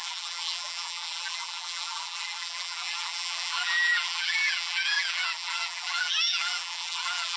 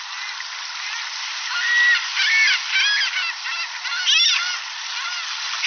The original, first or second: second